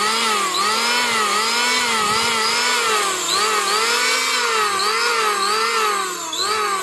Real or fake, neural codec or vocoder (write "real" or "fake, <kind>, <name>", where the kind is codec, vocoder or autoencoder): real